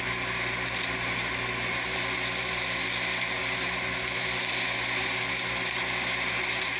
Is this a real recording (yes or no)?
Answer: yes